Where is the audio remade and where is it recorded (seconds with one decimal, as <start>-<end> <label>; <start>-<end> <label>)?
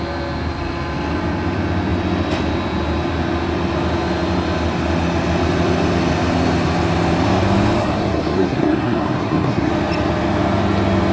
0.0-7.8 recorded; 7.8-9.7 remade; 9.7-11.1 recorded